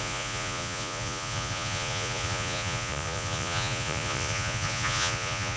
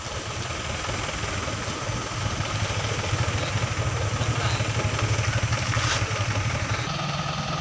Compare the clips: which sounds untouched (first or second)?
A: second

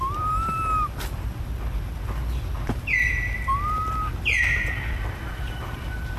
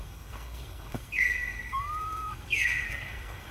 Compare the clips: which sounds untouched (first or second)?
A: first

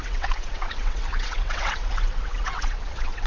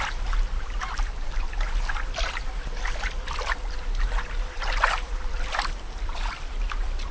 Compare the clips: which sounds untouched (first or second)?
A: second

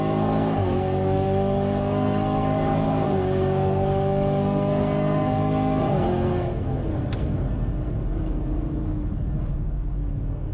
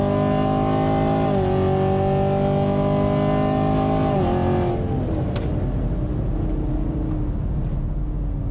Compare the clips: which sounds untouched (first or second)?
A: second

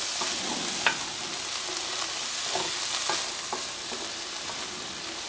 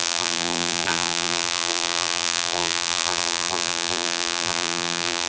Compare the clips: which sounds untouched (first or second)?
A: first